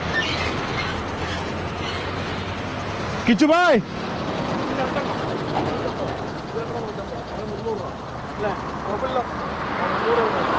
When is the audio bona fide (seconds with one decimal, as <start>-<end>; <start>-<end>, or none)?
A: 0.0-10.6